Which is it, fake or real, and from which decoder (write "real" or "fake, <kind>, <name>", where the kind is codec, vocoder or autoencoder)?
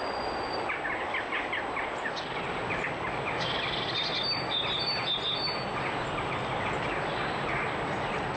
real